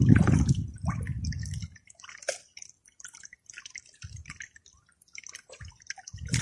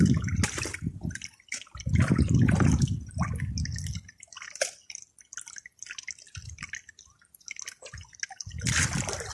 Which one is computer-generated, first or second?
first